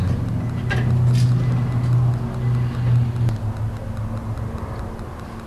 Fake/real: real